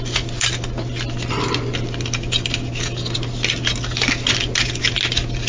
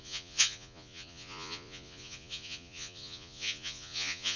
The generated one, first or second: second